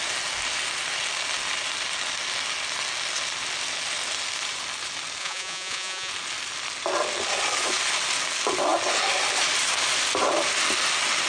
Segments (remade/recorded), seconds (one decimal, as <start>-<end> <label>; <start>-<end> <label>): 0.0-5.2 recorded; 5.2-6.1 remade; 6.1-11.3 recorded